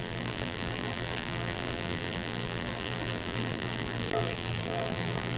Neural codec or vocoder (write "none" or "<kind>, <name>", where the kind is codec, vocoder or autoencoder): vocoder, BigVGAN v2